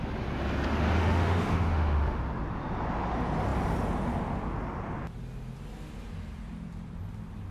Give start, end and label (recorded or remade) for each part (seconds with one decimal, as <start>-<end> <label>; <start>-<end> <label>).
0.0-1.0 recorded; 1.0-2.2 remade; 2.2-7.5 recorded